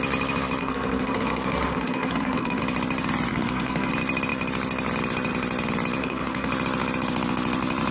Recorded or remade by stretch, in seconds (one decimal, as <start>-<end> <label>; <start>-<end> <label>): 0.0-0.6 recorded; 0.6-2.6 remade; 2.6-3.3 recorded; 3.3-3.9 remade; 3.9-6.0 recorded; 6.0-6.5 remade; 6.5-7.9 recorded